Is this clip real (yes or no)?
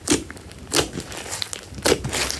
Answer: yes